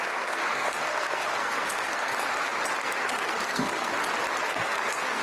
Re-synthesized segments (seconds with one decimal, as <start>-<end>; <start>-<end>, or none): 0.0-2.1; 2.8-3.9; 4.5-5.2